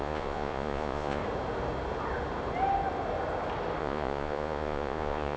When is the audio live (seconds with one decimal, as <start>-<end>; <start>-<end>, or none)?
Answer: 1.2-3.8